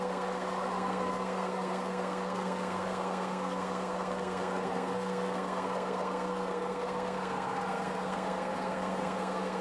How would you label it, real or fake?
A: fake